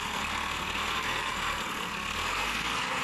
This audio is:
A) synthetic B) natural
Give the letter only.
A